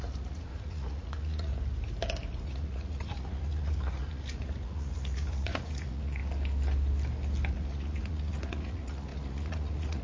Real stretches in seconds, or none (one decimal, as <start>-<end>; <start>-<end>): 1.5-2.4; 6.2-7.5

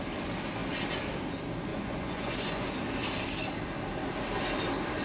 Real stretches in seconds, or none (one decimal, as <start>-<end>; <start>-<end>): 0.0-1.7; 2.7-5.0